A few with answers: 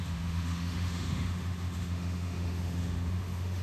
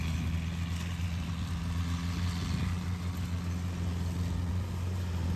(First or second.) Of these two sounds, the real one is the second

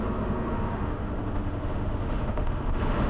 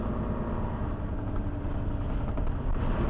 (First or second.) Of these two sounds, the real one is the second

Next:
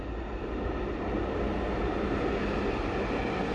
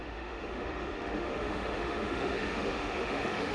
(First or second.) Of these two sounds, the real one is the first